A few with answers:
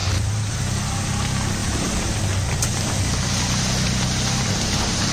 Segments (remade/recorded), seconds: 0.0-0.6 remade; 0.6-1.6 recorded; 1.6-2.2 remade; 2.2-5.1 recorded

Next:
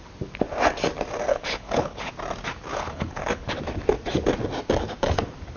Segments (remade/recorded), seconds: 0.0-1.3 recorded; 1.3-2.1 remade; 2.1-2.7 recorded; 2.7-3.6 remade; 3.6-5.6 recorded

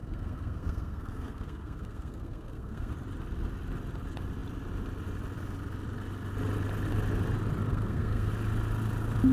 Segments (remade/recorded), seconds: 0.0-2.9 remade; 2.9-7.7 recorded; 7.7-8.3 remade; 8.3-9.3 recorded

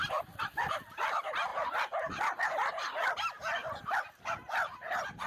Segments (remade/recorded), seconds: 0.0-5.3 recorded

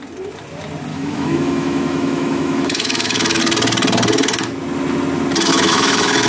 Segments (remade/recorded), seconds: 0.0-0.9 recorded; 0.9-3.4 remade; 3.4-5.5 recorded; 5.5-6.3 remade

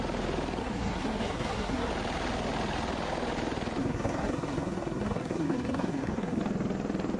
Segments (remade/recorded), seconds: 0.0-0.6 recorded; 0.6-1.9 remade; 1.9-3.8 recorded; 3.8-6.4 remade; 6.4-7.2 recorded

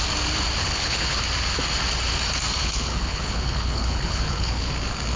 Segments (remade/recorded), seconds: 0.0-0.6 recorded; 0.6-1.2 remade; 1.2-2.6 recorded; 2.6-4.7 remade; 4.7-5.2 recorded

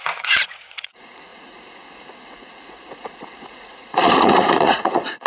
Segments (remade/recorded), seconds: 0.0-5.3 remade